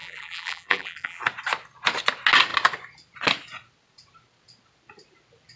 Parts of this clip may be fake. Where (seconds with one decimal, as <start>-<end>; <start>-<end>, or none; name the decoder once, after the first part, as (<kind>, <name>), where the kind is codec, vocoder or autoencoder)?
0.0-1.2 (vocoder, BigVGAN v2)